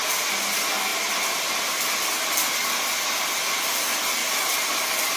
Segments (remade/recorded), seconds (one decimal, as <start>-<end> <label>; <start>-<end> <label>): 0.0-5.2 recorded